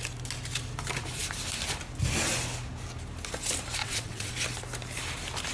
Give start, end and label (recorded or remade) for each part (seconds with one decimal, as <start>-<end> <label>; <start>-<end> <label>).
0.0-3.8 recorded; 3.8-4.3 remade; 4.3-5.5 recorded